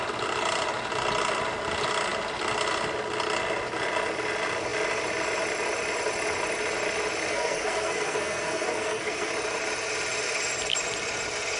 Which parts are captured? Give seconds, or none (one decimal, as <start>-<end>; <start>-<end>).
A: 0.0-7.3; 9.3-11.6